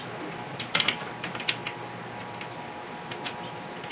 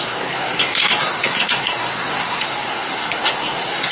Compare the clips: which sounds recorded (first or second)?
first